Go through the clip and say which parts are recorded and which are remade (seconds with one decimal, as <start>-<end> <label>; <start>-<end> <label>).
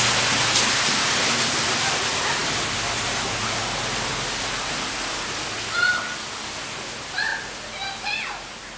0.0-8.8 recorded